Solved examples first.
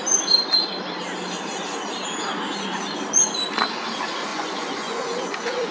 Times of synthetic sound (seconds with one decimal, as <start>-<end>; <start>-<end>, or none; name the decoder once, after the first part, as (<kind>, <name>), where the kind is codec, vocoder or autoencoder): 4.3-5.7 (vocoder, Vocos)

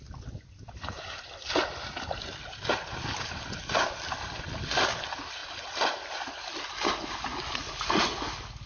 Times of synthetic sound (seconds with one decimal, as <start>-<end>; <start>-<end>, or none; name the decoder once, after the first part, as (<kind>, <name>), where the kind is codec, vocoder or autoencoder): none

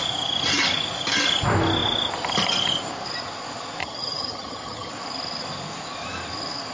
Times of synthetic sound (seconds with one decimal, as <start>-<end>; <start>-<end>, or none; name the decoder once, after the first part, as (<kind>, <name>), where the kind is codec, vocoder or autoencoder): 3.8-4.9 (vocoder, HiFi-GAN)